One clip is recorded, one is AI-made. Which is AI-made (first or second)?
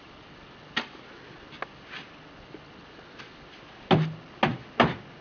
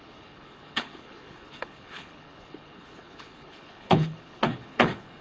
second